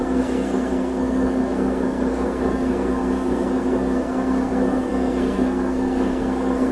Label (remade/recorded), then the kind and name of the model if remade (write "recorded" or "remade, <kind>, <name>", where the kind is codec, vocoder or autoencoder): remade, codec, SNAC